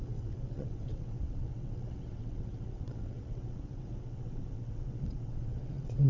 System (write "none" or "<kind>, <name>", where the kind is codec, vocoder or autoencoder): vocoder, WaveNeXt